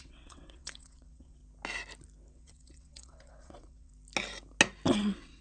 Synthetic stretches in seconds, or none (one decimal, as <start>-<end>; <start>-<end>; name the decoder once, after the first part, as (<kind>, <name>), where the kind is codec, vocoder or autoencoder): 0.0-1.4 (vocoder, WaveNeXt); 2.3-3.9; 4.9-5.4